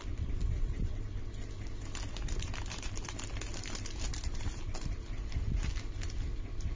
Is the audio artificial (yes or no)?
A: no